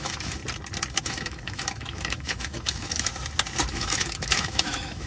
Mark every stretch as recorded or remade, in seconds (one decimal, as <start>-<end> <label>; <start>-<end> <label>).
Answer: 0.0-0.4 remade; 0.4-1.0 recorded; 1.0-3.1 remade; 3.1-3.7 recorded; 3.7-5.1 remade